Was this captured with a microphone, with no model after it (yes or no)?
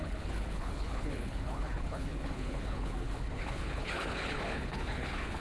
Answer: no